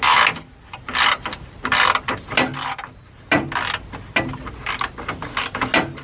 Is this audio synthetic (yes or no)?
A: no